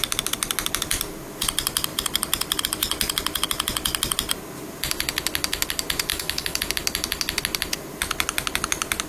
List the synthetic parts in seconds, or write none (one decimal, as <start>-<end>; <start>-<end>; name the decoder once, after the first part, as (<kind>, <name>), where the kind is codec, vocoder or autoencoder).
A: 6.1-6.6 (autoencoder, DAC-VAE)